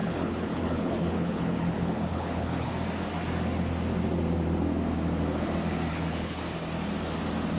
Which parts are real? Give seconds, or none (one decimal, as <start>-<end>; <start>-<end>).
2.7-5.9; 6.4-7.6